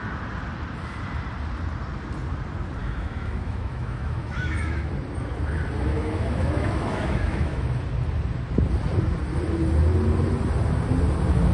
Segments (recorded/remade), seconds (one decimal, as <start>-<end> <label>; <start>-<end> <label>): 0.0-2.8 recorded; 2.8-4.9 remade; 4.9-5.9 recorded; 5.9-7.8 remade; 7.8-11.5 recorded